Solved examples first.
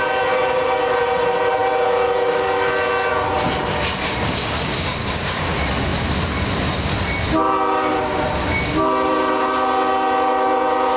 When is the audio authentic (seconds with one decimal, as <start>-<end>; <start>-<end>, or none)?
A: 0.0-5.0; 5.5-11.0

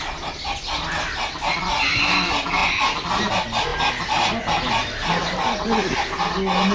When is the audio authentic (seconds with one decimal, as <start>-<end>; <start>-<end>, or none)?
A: 0.0-6.7

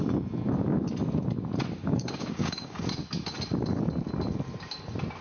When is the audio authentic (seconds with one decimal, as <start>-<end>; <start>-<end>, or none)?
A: 0.0-1.8; 2.8-5.2

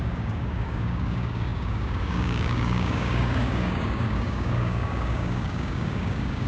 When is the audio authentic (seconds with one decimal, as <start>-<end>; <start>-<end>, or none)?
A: none